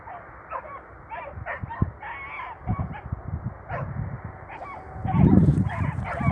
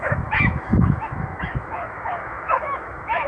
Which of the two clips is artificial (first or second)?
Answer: second